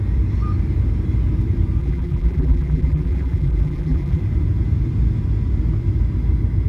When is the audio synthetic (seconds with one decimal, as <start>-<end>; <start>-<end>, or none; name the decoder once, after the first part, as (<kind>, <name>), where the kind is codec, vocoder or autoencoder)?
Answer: 1.8-4.2 (vocoder, BigVGAN v2)